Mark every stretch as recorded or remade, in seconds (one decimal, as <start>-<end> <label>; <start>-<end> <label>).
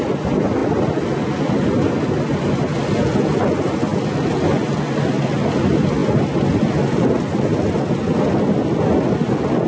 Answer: 0.0-9.7 recorded